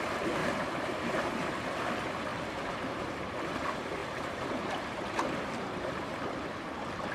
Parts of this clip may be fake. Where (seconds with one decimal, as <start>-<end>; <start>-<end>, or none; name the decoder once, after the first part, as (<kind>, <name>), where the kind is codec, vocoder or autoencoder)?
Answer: 0.4-1.9 (vocoder, BigVGAN v2); 2.3-3.5; 4.0-6.2